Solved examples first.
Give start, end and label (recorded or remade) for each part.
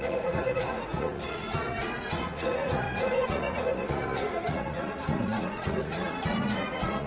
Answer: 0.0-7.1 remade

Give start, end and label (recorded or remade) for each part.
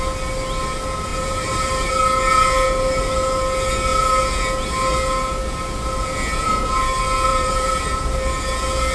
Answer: 0.0-1.1 recorded; 1.1-1.9 remade; 1.9-7.3 recorded; 7.3-7.8 remade; 7.8-8.9 recorded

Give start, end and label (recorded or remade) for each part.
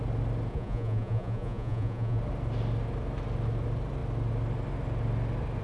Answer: 0.0-0.5 recorded; 0.5-2.2 remade; 2.2-5.6 recorded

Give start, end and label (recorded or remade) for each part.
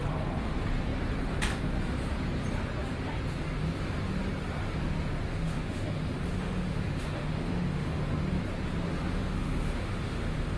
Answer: 0.0-5.3 recorded; 5.3-8.0 remade; 8.0-9.1 recorded; 9.1-10.6 remade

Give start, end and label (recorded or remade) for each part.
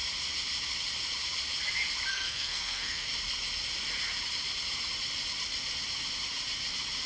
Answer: 0.0-2.1 recorded; 2.1-3.1 remade; 3.1-7.1 recorded